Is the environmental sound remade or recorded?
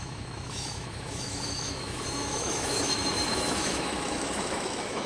remade